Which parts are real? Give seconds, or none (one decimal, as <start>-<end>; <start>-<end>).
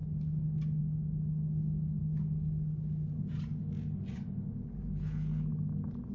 0.0-6.1